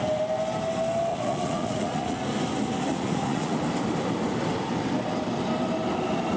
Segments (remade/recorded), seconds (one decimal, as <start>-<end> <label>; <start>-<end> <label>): 0.0-1.1 recorded; 1.1-2.2 remade; 2.2-2.9 recorded; 2.9-3.6 remade; 3.6-6.4 recorded